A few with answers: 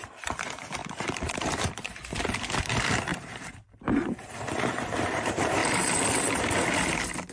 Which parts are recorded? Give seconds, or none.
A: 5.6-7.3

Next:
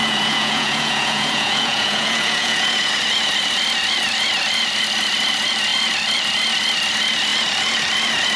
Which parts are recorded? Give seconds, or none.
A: 2.9-8.4

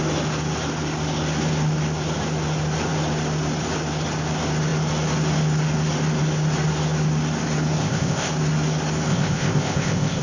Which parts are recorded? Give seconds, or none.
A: 0.0-7.8; 8.3-9.1

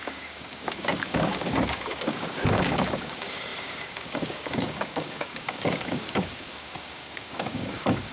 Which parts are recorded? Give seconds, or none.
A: none